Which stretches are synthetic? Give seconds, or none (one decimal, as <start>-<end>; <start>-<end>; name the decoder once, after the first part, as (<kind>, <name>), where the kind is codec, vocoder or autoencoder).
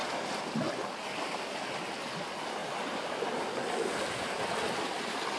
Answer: none